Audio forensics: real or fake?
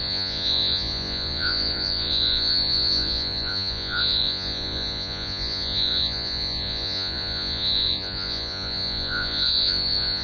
fake